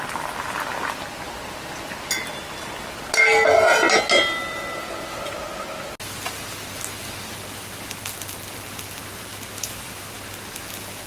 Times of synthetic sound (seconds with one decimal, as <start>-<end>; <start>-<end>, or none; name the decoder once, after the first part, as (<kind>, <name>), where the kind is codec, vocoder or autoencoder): none